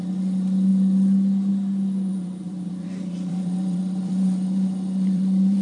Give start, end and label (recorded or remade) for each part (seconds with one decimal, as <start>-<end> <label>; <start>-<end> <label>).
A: 0.0-2.1 recorded; 2.1-5.6 remade